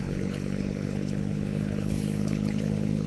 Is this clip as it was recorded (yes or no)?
no